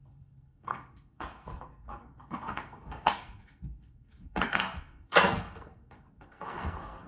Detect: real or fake fake